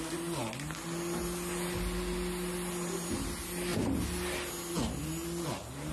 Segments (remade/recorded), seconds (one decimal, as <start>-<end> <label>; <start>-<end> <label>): 0.0-5.9 recorded